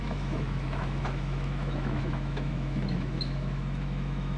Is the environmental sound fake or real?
fake